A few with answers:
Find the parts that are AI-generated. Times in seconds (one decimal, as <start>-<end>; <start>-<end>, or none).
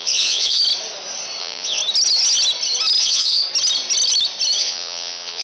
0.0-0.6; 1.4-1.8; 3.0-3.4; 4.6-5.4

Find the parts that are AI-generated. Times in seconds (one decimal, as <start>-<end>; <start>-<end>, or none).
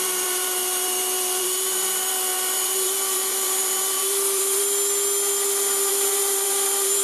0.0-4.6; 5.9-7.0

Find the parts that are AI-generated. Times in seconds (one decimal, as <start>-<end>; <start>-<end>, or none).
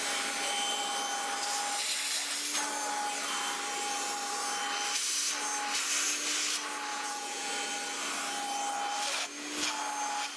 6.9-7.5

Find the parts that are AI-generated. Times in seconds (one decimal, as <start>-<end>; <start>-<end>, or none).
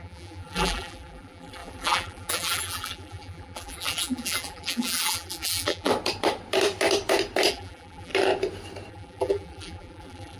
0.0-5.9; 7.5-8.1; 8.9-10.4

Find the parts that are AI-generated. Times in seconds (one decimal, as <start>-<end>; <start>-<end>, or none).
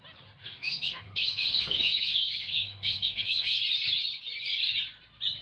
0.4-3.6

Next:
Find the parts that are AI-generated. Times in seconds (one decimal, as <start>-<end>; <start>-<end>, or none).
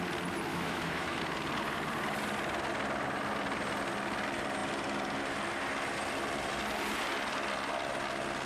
0.5-1.2